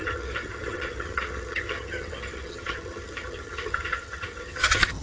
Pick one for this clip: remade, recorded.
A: remade